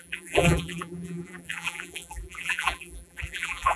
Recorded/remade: remade